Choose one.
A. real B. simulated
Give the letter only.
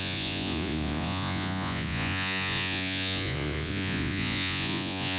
B